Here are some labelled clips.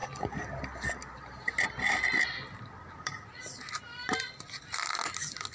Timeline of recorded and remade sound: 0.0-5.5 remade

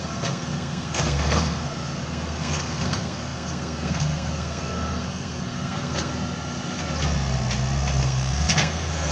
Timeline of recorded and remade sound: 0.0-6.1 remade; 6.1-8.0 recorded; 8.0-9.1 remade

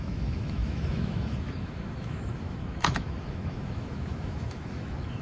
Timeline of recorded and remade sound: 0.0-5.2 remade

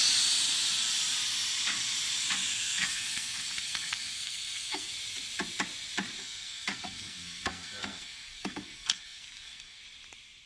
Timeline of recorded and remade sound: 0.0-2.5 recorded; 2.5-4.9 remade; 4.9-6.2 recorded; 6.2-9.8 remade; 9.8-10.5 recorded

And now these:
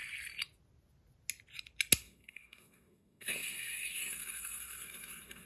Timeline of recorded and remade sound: 0.0-2.0 recorded; 2.0-5.5 remade

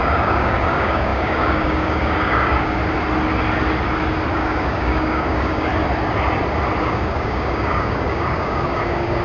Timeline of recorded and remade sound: 0.0-2.8 remade; 2.8-4.3 recorded; 4.3-5.7 remade; 5.7-6.8 recorded; 6.8-9.2 remade

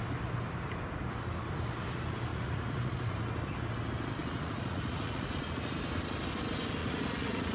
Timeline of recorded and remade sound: 0.0-2.3 recorded; 2.3-3.2 remade; 3.2-4.2 recorded; 4.2-5.7 remade; 5.7-6.8 recorded; 6.8-7.5 remade